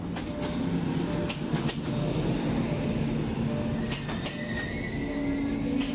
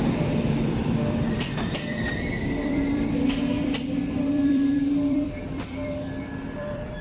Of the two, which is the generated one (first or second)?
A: second